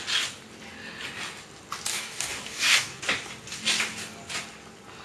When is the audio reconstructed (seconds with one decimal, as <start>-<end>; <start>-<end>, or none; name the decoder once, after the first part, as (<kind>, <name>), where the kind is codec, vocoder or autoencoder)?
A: 1.9-3.0 (codec, DAC)